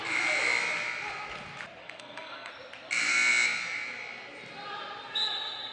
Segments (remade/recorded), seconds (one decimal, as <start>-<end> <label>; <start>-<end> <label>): 0.0-1.8 recorded; 1.8-2.5 remade; 2.5-5.7 recorded